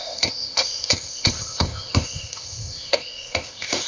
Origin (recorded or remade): remade